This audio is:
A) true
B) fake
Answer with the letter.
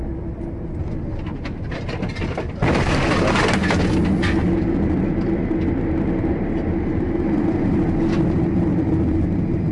A